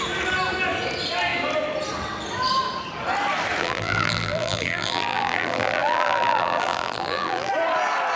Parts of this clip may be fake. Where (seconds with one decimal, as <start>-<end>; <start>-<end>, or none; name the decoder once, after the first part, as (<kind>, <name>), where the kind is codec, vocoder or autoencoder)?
3.6-7.5 (vocoder, BigVGAN v2)